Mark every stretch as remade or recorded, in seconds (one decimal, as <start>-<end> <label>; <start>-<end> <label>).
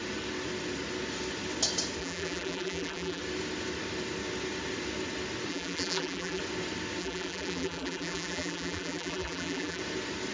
0.0-2.0 recorded; 2.0-3.2 remade; 3.2-5.5 recorded; 5.5-6.4 remade; 6.4-7.0 recorded; 7.0-9.8 remade; 9.8-10.3 recorded